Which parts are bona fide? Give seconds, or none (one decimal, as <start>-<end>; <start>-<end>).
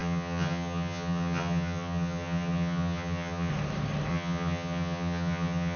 3.5-4.1